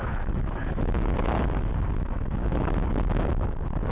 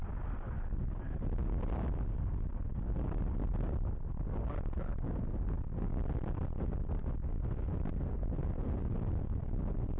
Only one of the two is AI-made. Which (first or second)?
first